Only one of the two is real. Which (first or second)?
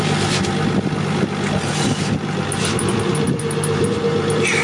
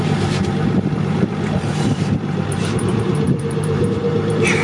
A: first